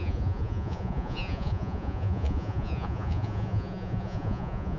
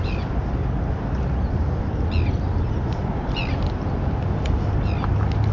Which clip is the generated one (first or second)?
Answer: first